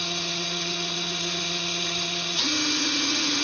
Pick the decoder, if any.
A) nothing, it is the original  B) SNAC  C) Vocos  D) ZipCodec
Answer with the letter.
C